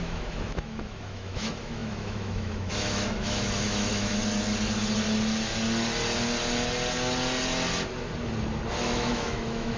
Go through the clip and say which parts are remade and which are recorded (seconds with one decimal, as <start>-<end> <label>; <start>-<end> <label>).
0.0-4.2 remade; 4.2-8.8 recorded; 8.8-9.8 remade